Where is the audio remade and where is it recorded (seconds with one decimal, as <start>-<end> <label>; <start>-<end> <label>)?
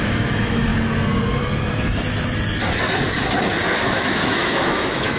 0.0-0.7 remade; 0.7-3.8 recorded; 3.8-5.2 remade